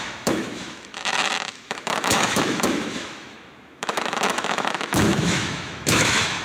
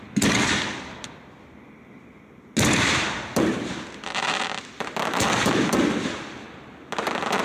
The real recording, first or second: second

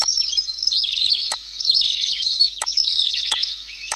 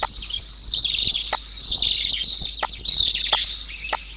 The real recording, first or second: second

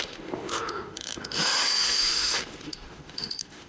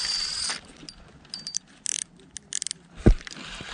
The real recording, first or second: second